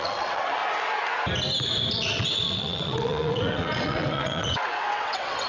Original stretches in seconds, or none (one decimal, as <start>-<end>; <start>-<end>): 0.6-1.9